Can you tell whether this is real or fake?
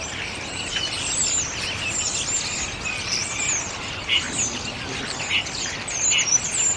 real